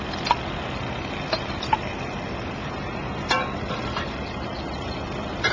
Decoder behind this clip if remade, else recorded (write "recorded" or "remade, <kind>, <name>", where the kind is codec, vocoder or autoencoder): recorded